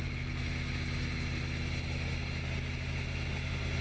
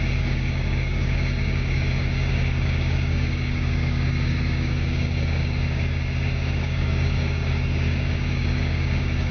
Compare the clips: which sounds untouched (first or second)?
first